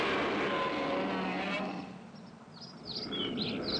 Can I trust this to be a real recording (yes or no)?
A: yes